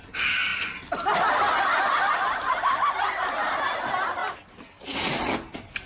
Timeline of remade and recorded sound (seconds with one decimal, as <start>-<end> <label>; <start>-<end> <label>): 0.0-5.9 recorded